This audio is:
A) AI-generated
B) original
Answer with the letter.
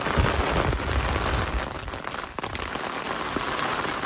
B